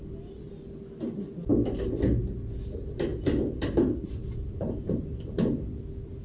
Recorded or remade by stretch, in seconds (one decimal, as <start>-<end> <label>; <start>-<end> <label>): 0.0-3.1 recorded; 3.1-6.2 remade